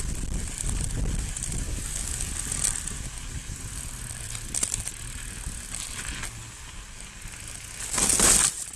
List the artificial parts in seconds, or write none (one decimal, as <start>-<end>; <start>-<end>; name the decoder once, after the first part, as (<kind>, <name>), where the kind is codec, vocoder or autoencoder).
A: 1.7-2.3 (codec, DAC)